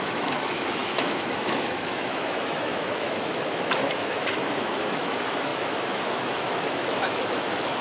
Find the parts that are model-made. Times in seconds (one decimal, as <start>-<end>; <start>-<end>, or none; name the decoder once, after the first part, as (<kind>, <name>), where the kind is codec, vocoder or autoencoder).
0.0-7.8 (autoencoder, DAC-VAE)